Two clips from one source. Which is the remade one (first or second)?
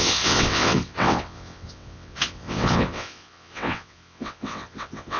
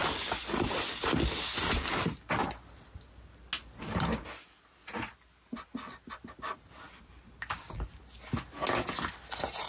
first